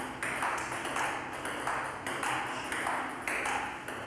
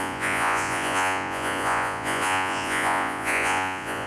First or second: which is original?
first